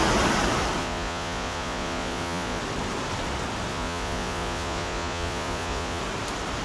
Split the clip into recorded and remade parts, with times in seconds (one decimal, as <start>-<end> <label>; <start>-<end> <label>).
0.0-0.8 recorded; 0.8-2.6 remade; 2.6-3.7 recorded; 3.7-6.0 remade; 6.0-6.6 recorded